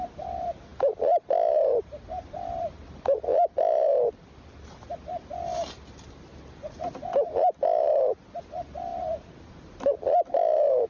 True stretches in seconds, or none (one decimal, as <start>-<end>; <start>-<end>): 0.0-10.9